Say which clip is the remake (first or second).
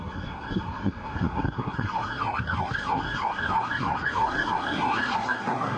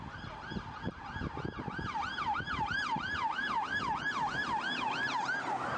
first